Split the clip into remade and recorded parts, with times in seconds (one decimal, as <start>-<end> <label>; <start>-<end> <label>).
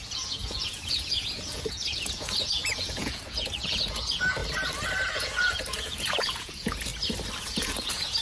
0.0-4.4 remade; 4.4-5.1 recorded; 5.1-6.9 remade; 6.9-7.4 recorded; 7.4-8.2 remade